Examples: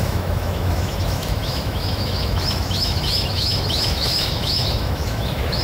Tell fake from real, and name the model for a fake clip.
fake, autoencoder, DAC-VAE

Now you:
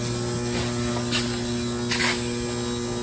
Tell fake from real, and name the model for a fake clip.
real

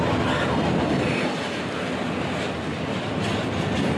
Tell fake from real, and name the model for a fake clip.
real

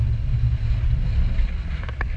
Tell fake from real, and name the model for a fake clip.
real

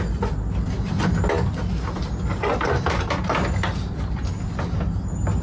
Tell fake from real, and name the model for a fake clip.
real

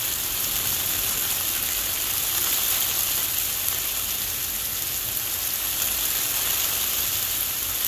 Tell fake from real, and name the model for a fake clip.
real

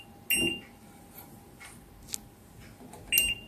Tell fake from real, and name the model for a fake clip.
real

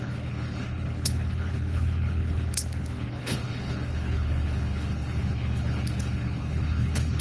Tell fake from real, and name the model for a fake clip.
fake, codec, HILCodec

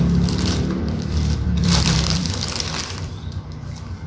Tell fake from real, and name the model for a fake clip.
fake, vocoder, BigVGAN v2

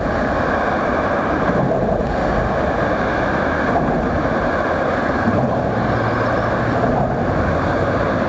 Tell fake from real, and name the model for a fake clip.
real